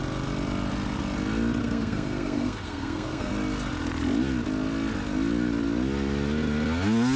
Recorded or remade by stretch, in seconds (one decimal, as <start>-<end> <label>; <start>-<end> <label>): 0.0-1.6 recorded; 1.6-3.3 remade; 3.3-7.2 recorded